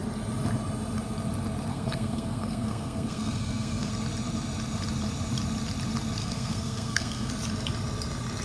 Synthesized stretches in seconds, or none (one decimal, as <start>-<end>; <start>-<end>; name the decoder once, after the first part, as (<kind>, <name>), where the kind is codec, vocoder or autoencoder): 1.7-3.9 (codec, SNAC); 6.2-7.3